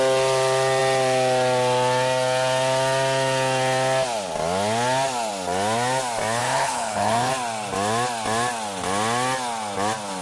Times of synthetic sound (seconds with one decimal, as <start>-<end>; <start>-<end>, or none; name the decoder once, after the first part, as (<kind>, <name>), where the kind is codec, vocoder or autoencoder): 6.4-7.3 (codec, HILCodec)